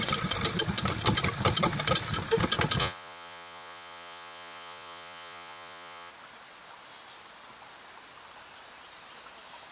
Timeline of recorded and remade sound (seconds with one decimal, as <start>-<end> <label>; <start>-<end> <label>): 0.0-2.8 recorded; 2.8-6.1 remade; 6.1-9.7 recorded

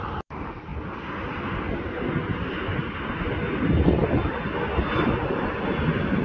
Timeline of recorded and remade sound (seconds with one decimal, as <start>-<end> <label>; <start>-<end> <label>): 0.0-6.2 recorded

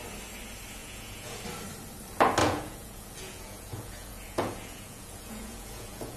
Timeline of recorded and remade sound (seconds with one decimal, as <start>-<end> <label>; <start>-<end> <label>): 0.0-0.8 recorded; 0.8-1.4 remade; 1.4-2.4 recorded; 2.4-6.2 remade

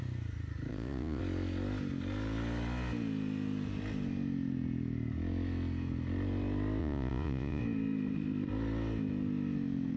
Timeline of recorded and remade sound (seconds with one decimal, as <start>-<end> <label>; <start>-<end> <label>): 0.0-0.7 recorded; 0.7-1.2 remade; 1.2-6.8 recorded; 6.8-7.6 remade; 7.6-10.0 recorded